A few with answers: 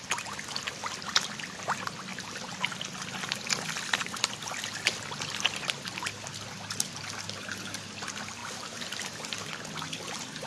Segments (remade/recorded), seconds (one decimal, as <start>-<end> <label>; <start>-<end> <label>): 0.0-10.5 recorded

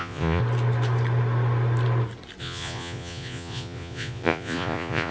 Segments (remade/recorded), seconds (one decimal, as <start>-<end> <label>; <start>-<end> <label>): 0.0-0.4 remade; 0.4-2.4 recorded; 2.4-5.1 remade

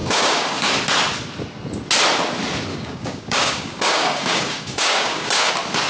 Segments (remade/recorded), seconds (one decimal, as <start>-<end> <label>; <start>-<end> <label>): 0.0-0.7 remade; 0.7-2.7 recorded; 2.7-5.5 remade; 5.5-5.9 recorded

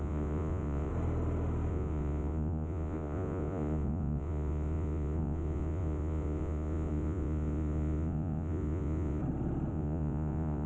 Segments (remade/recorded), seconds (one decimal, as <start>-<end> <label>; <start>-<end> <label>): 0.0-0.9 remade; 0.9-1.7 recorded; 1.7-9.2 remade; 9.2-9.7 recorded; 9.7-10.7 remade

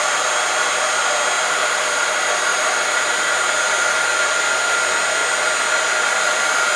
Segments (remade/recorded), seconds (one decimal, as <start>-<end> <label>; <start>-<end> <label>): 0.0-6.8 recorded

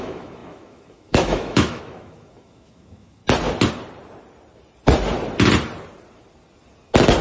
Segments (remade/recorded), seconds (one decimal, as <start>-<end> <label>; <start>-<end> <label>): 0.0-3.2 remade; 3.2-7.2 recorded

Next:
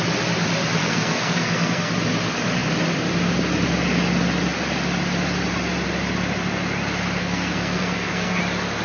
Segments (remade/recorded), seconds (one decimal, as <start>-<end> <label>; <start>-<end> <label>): 0.0-0.8 recorded; 0.8-1.9 remade; 1.9-7.2 recorded; 7.2-8.4 remade; 8.4-8.8 recorded